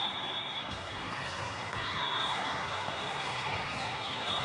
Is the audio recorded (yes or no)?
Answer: no